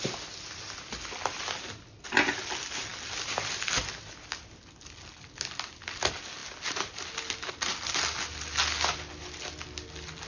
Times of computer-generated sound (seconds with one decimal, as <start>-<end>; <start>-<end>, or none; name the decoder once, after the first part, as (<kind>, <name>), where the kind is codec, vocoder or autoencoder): none